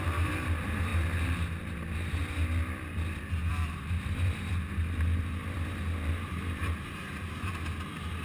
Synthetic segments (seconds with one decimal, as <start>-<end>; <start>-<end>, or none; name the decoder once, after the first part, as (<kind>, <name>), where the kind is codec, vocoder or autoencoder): 0.0-0.9 (vocoder, BigVGAN v2); 1.6-2.2; 3.5-8.2